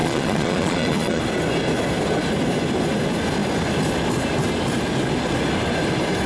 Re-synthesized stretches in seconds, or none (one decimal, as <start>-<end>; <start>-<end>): 0.0-1.2